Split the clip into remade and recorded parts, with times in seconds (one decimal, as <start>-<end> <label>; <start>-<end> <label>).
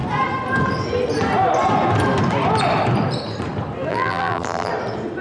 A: 0.0-3.9 recorded; 3.9-4.7 remade; 4.7-5.2 recorded